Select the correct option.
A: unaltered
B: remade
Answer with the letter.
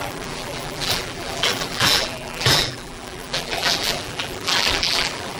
B